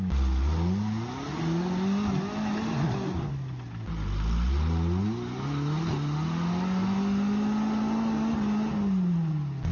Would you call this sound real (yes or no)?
yes